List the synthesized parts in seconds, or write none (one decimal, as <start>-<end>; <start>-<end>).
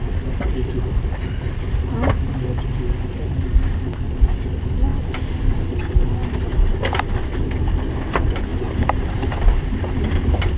4.9-5.8; 6.2-7.3; 8.5-9.3